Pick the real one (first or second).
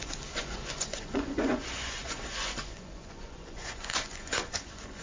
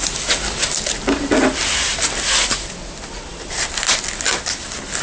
second